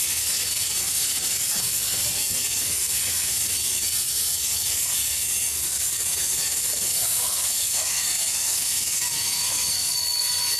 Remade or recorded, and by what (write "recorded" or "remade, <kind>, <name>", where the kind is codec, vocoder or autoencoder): remade, codec, SNAC